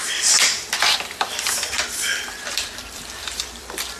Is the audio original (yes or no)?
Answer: no